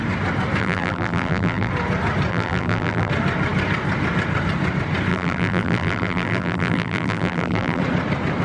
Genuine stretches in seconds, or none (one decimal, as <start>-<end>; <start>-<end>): 0.0-0.6; 1.7-2.3; 3.1-5.1; 7.8-8.4